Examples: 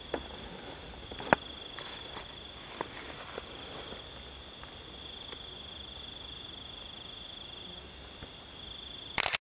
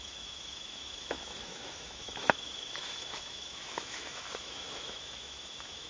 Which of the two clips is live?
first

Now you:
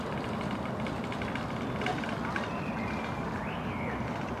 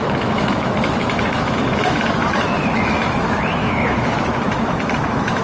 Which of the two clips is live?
first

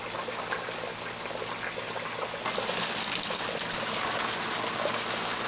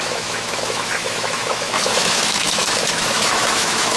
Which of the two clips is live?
first